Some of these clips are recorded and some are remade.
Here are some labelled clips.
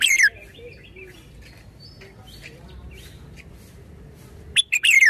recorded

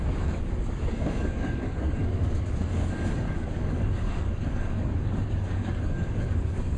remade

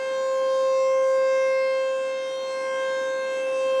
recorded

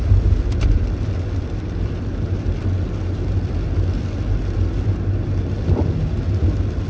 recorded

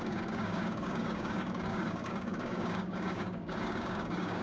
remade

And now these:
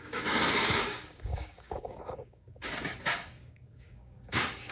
remade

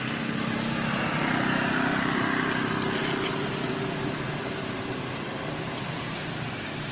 recorded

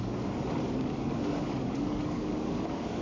remade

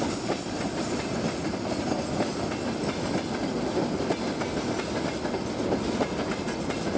recorded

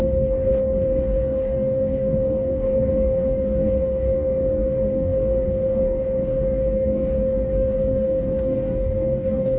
remade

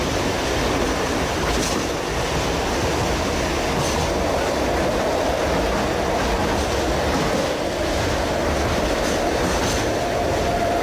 recorded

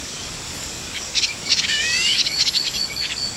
remade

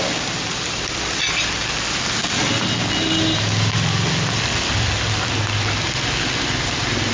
recorded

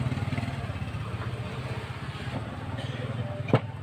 recorded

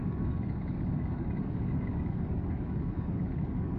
remade